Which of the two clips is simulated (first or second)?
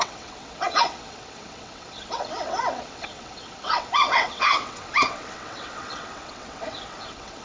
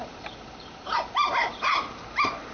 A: first